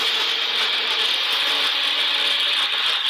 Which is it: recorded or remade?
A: recorded